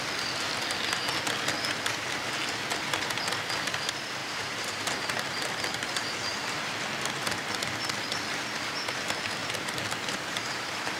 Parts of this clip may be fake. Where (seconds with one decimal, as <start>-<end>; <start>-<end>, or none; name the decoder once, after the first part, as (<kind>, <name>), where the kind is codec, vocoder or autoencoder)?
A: 4.2-5.6 (vocoder, BigVGAN v2); 9.4-11.0